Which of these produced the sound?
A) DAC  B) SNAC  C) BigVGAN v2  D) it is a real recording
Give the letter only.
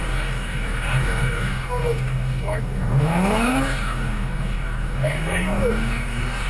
A